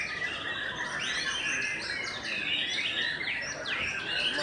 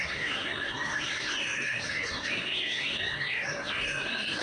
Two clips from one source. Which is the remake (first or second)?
second